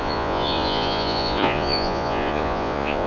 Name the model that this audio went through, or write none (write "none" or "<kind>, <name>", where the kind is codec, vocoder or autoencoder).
vocoder, Vocos